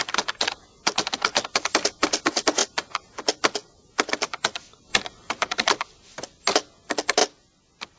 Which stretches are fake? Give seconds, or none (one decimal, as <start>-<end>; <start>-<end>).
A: 4.9-5.7

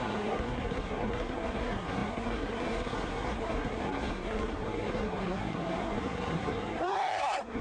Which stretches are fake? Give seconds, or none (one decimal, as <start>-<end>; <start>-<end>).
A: 0.0-7.6

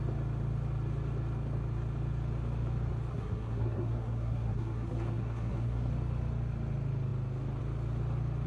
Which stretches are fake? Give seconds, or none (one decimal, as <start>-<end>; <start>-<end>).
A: 3.1-5.9

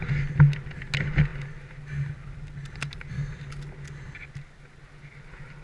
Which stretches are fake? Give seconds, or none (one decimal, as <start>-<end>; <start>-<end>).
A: none

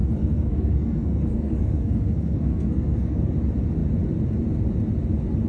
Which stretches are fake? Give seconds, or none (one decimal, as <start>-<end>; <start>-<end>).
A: 0.0-3.3